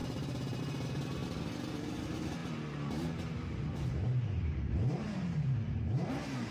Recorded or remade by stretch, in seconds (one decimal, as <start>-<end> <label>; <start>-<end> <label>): 0.0-1.2 remade; 1.2-1.7 recorded; 1.7-6.5 remade